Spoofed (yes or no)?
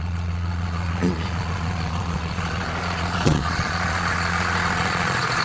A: yes